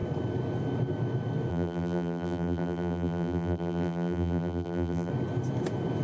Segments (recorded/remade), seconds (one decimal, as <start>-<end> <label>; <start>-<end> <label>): 0.0-1.5 recorded; 1.5-5.1 remade; 5.1-6.0 recorded